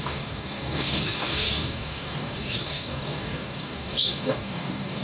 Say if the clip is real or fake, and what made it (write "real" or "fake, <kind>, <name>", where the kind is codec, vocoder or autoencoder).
fake, codec, DAC